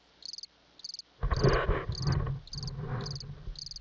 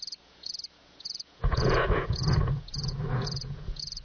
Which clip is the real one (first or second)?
first